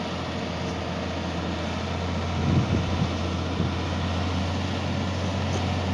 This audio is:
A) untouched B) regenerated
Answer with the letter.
A